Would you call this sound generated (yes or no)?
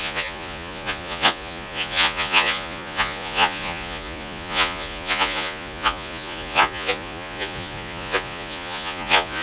yes